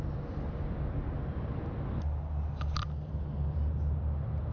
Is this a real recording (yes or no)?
yes